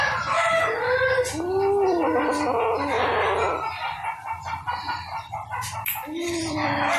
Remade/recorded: recorded